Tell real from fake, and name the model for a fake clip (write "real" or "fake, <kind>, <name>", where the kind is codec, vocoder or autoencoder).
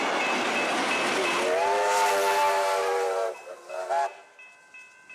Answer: real